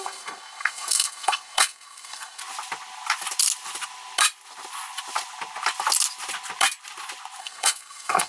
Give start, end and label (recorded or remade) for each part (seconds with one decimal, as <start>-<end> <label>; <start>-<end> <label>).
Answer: 0.0-2.4 remade; 2.4-7.4 recorded; 7.4-8.3 remade